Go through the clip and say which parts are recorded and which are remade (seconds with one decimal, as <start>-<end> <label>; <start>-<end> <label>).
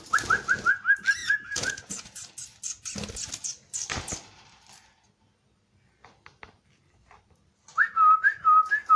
0.0-1.2 recorded; 1.2-2.3 remade; 2.3-9.0 recorded